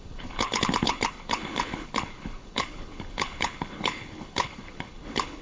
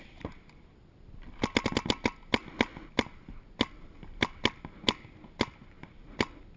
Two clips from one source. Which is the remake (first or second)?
first